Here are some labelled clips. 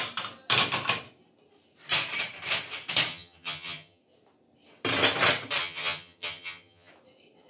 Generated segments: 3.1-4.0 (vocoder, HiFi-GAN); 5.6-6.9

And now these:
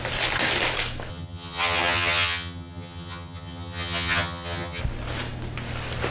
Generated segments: 1.1-4.8 (vocoder, HiFi-GAN)